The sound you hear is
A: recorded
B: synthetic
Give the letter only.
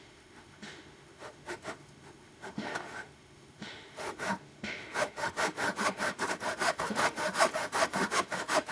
B